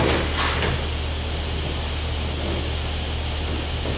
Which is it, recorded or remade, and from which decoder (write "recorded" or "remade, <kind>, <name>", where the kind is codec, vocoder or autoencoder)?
recorded